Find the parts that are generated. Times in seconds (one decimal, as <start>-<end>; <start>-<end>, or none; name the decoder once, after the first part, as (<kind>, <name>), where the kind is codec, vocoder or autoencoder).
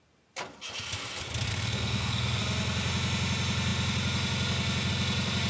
1.5-2.4 (codec, SNAC)